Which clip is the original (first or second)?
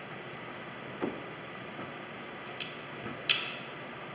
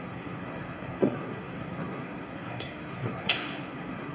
first